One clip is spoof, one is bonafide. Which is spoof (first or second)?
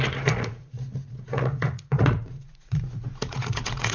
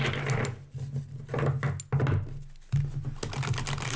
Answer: first